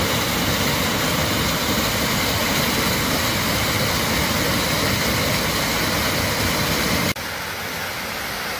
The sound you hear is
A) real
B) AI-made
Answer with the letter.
A